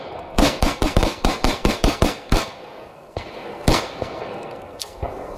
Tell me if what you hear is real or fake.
fake